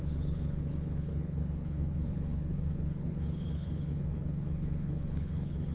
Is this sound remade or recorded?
remade